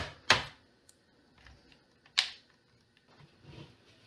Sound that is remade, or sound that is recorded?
recorded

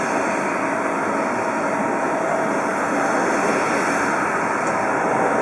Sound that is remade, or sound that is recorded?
recorded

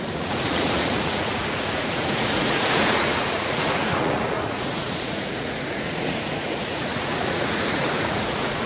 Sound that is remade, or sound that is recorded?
remade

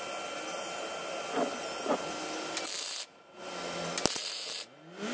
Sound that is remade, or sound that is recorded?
recorded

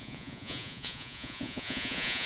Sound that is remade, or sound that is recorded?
remade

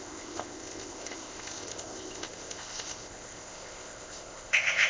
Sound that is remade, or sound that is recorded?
remade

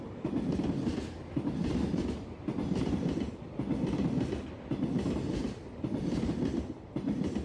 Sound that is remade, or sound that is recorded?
recorded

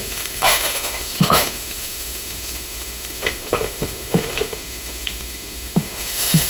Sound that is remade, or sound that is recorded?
remade